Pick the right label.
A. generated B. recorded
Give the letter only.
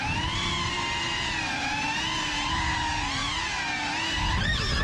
B